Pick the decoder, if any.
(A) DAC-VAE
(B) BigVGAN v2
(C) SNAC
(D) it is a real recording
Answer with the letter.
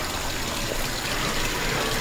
D